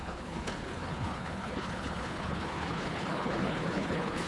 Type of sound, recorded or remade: remade